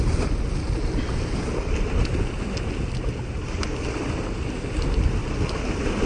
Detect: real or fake real